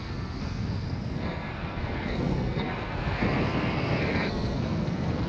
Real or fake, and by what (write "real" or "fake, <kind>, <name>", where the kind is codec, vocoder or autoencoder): fake, codec, SNAC